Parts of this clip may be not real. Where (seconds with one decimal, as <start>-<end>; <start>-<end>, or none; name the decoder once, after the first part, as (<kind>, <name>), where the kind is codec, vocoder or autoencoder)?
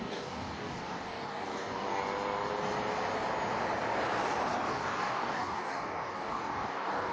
0.0-2.0 (codec, DAC); 4.7-7.1